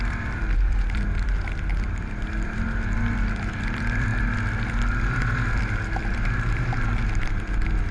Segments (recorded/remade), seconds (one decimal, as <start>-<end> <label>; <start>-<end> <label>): 0.0-4.1 remade; 4.1-4.9 recorded; 4.9-7.9 remade